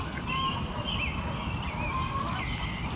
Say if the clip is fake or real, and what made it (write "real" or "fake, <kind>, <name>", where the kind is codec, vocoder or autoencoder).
real